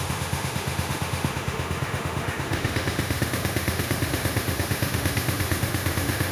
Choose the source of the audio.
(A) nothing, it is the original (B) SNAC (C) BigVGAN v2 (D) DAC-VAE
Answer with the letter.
D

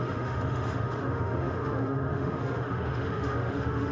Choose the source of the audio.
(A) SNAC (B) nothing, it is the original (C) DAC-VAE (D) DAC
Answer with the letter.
C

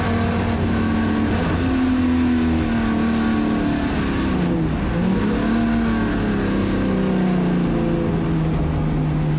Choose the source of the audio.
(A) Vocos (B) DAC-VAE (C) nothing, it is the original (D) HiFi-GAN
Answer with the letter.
C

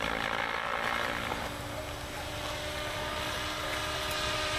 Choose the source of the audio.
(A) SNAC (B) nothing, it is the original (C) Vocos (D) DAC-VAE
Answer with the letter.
B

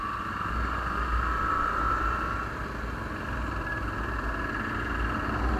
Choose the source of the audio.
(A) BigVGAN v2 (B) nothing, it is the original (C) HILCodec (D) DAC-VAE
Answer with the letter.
B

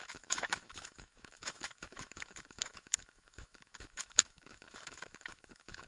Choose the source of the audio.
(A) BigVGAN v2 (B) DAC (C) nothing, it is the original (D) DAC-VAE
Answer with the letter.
D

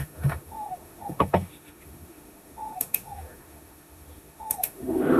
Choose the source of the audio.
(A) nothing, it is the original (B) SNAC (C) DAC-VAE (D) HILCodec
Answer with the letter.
C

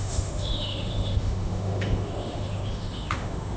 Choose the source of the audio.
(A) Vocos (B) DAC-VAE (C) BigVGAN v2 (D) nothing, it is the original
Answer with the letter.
B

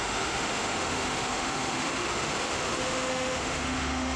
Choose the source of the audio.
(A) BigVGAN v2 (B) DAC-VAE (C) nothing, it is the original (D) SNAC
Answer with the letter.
B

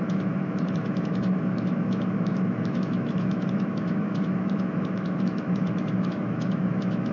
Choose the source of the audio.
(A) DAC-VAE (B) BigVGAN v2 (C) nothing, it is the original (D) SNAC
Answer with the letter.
A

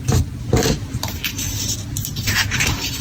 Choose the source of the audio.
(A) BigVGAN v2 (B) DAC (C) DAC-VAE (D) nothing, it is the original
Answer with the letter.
D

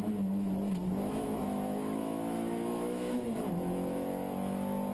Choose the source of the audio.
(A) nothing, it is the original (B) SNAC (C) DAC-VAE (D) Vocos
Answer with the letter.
C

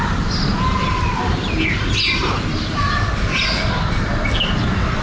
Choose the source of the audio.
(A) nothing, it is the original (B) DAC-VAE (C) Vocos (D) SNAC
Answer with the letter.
A